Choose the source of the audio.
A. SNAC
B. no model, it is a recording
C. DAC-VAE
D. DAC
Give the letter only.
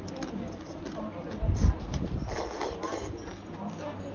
B